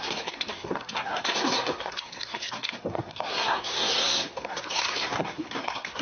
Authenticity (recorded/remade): remade